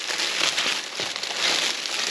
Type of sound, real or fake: real